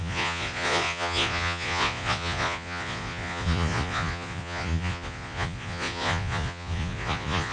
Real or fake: fake